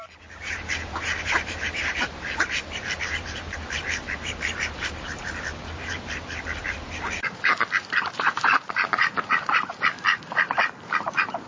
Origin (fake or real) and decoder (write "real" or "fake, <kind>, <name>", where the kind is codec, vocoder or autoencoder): fake, vocoder, BigVGAN v2